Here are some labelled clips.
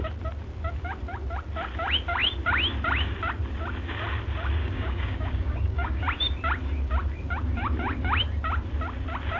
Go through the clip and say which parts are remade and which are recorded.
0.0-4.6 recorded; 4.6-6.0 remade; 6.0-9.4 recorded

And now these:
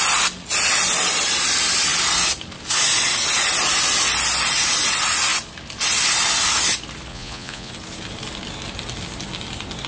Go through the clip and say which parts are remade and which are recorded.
0.0-7.1 recorded; 7.1-7.7 remade; 7.7-9.9 recorded